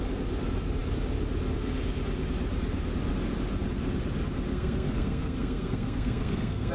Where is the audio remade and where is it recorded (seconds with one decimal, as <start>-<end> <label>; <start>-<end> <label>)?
0.0-4.5 recorded; 4.5-6.7 remade